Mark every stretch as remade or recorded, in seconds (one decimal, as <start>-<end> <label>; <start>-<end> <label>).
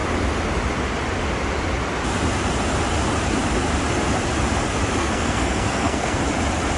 0.0-5.0 recorded; 5.0-6.2 remade; 6.2-6.8 recorded